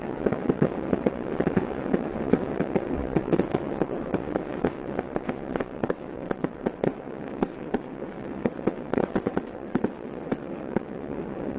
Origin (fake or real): fake